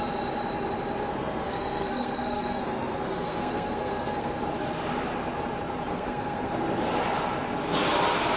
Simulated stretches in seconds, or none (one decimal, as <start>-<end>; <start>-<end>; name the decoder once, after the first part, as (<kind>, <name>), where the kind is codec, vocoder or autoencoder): 1.1-4.3 (codec, SNAC); 5.9-6.5